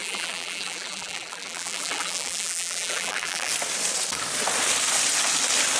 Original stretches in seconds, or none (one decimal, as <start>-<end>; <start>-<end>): 3.5-5.8